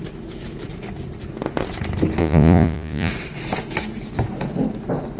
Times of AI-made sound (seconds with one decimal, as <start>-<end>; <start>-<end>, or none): 2.2-3.1

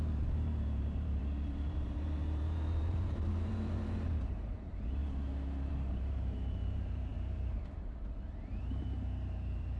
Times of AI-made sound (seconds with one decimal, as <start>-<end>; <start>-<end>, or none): 0.0-5.0; 5.7-9.8

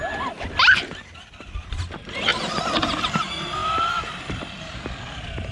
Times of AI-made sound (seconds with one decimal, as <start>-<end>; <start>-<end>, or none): 2.3-3.0; 3.6-4.6

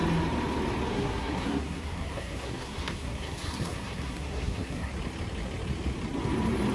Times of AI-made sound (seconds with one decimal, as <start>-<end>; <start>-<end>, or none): 0.9-4.9

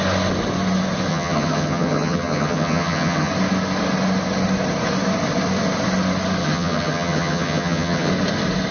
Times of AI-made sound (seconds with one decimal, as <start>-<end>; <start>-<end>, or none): 1.1-3.3; 6.4-8.1